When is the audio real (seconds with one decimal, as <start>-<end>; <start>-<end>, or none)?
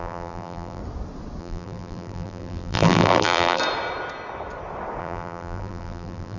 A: 0.8-1.4; 3.6-5.0